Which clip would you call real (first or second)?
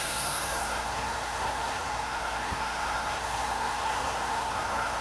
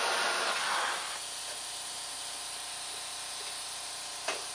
second